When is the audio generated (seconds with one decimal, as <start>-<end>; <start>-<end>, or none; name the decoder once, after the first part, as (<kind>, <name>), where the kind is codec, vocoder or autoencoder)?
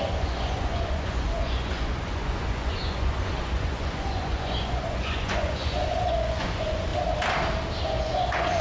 0.0-6.9 (vocoder, Vocos); 7.8-8.6